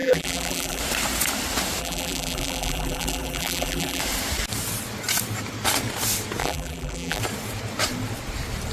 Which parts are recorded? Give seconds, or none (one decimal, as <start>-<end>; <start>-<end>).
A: 0.8-1.8; 4.0-6.4; 7.2-8.7